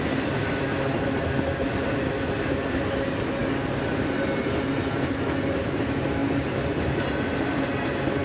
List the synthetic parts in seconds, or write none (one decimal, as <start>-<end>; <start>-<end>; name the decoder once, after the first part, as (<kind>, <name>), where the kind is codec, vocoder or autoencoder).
none